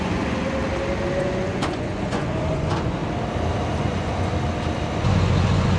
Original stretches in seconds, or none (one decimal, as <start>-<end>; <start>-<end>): 0.6-1.2; 3.0-3.8; 4.3-4.9

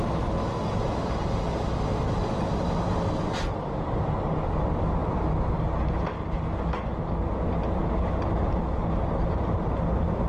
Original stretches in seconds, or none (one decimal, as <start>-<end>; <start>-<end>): 0.0-10.3

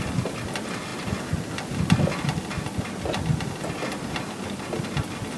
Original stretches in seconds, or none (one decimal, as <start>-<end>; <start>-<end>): 0.0-5.4

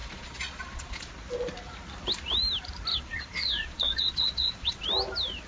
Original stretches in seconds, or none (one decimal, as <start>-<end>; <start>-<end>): 1.1-2.9; 4.8-5.5

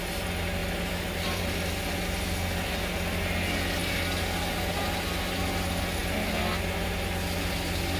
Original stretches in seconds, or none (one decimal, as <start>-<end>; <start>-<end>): 0.0-8.0

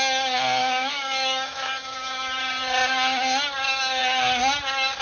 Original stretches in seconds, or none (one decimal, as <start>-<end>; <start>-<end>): 0.0-0.6; 2.4-5.0